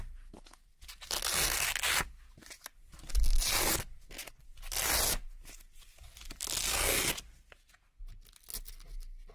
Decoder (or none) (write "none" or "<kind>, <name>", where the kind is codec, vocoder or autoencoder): none